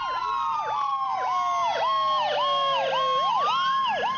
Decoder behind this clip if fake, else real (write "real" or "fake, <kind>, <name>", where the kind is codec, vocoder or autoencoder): real